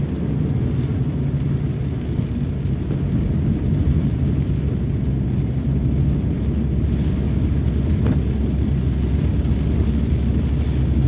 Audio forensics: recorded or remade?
recorded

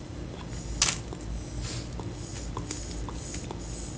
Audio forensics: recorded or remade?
recorded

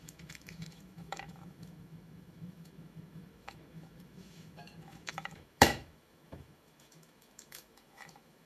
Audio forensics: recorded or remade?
remade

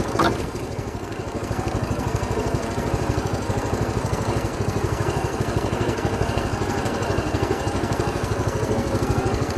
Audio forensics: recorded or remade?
remade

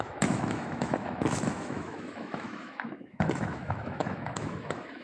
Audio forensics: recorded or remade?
remade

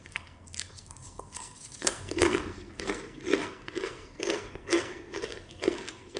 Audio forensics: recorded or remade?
remade